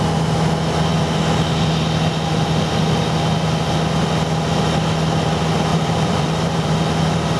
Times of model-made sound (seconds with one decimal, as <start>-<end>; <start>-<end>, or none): 5.7-6.7